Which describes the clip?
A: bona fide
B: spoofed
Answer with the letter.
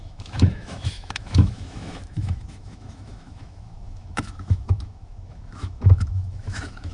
B